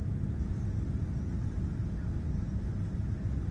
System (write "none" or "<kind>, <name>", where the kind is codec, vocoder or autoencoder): none